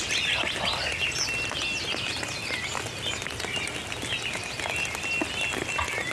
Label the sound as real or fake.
real